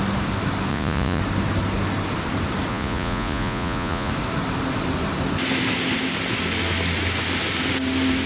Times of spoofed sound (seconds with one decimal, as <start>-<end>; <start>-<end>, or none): 0.7-1.2; 2.7-4.1

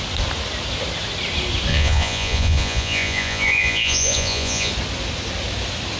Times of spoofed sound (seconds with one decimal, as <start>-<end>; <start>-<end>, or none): 1.7-4.7

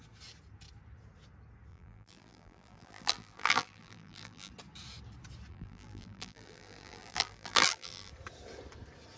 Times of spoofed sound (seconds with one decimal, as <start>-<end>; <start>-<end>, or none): 1.7-4.5; 5.5-8.1

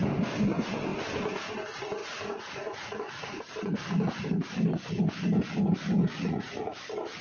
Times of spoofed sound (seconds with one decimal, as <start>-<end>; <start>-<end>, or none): 2.0-3.4; 6.0-6.7